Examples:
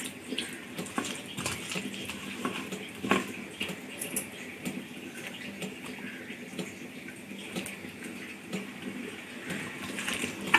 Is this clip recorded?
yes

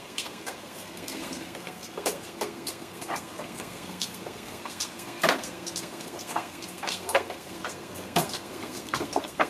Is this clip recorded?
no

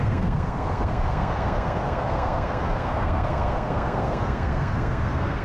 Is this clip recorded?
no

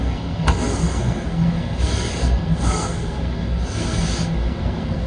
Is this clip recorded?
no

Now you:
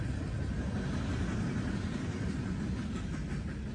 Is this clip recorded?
yes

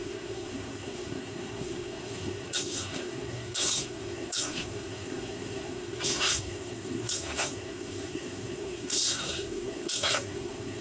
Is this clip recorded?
no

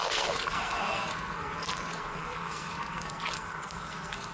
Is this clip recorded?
no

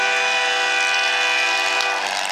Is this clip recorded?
yes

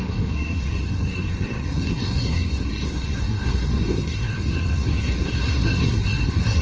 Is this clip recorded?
no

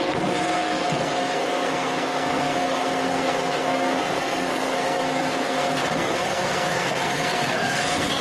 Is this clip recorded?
no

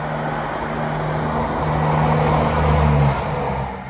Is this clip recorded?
yes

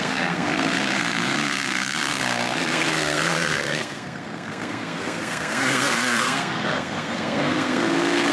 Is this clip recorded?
no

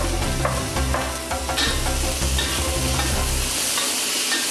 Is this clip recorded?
yes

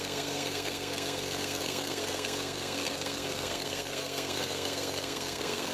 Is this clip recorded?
no